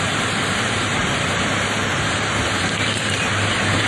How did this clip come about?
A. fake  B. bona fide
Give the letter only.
A